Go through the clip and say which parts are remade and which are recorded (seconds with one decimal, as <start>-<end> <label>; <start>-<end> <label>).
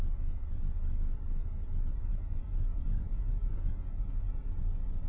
0.0-2.1 recorded; 2.1-4.4 remade; 4.4-5.1 recorded